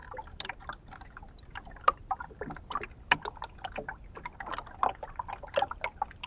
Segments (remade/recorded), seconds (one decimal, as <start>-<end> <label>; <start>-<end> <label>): 0.0-6.3 recorded